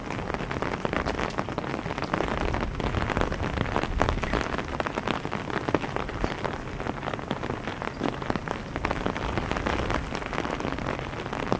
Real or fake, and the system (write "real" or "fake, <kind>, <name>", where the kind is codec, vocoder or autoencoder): real